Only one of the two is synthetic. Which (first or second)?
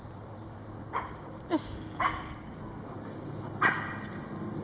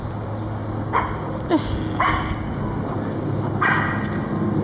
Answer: first